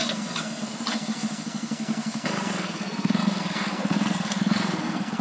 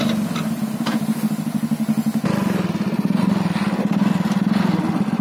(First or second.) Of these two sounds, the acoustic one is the second